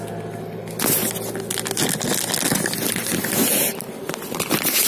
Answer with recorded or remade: recorded